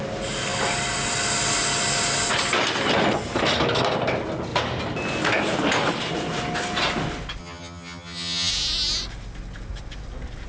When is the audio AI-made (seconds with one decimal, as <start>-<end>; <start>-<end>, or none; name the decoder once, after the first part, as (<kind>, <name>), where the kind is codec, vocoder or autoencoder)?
7.4-8.5 (vocoder, HiFi-GAN)